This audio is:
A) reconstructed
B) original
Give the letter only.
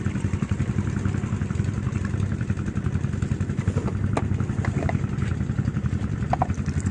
B